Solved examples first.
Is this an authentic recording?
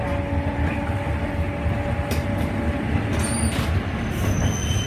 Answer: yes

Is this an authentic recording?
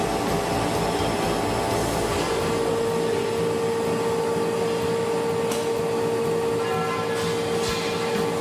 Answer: yes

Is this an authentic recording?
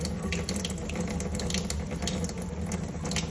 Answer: yes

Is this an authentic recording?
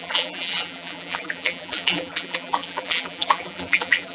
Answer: no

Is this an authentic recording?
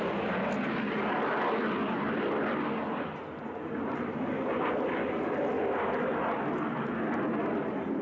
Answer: yes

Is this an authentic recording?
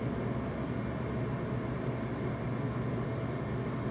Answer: yes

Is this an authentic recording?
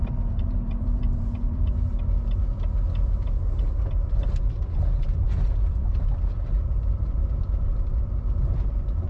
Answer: no